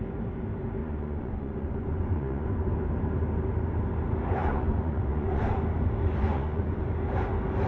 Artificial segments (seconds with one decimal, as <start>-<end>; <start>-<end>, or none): 0.8-2.7; 4.4-5.6; 6.2-6.8